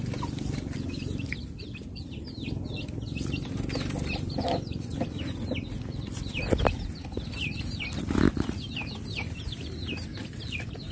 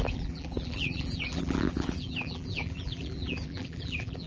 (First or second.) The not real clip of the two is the second